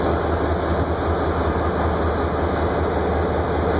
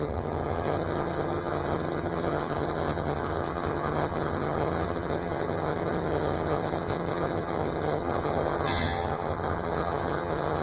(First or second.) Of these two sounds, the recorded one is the first